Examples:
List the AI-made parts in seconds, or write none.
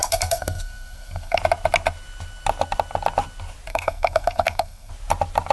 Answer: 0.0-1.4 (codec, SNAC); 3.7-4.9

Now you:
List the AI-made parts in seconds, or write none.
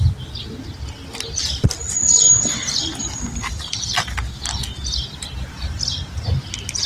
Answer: none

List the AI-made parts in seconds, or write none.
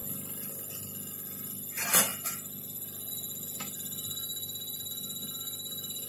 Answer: none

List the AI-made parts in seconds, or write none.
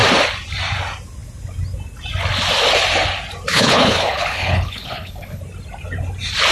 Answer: 3.5-5.4 (codec, HILCodec)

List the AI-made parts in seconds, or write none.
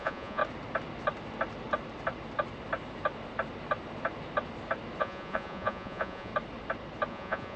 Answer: 0.0-0.4 (vocoder, Vocos); 5.0-6.3; 7.1-7.6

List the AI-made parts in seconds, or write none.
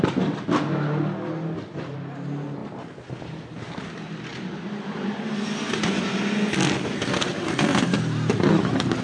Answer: 4.3-5.3 (vocoder, BigVGAN v2); 7.3-8.0